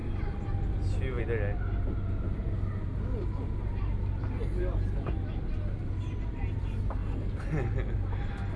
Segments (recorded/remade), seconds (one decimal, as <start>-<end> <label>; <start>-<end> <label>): 0.0-8.6 recorded